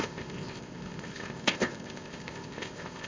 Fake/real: fake